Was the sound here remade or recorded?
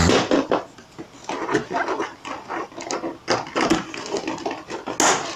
recorded